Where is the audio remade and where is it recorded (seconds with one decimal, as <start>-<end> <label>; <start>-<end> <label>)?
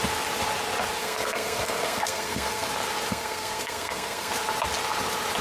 0.0-1.0 recorded; 1.0-2.7 remade; 2.7-3.1 recorded; 3.1-4.3 remade; 4.3-5.4 recorded